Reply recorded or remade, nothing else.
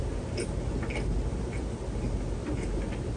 recorded